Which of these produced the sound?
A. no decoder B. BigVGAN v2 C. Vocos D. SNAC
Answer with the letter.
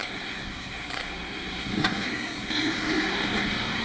D